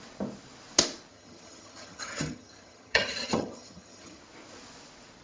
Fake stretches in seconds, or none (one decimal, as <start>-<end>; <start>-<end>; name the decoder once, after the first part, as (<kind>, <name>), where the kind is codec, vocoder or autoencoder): 1.1-4.2 (vocoder, HiFi-GAN)